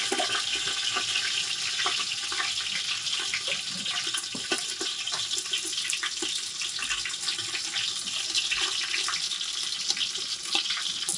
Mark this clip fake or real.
real